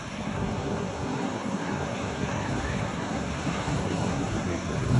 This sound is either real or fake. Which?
fake